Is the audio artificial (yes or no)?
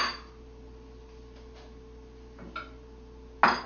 no